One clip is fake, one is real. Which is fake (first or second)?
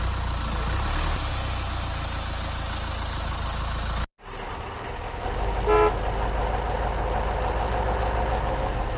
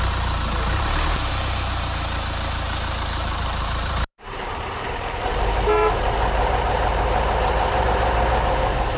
second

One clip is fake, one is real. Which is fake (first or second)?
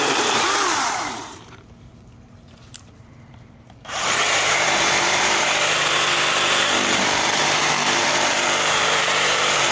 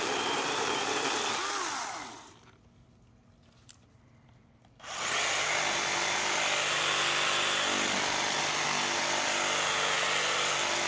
first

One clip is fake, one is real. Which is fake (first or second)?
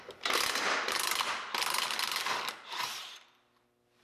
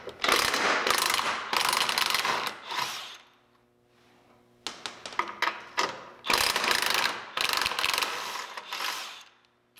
first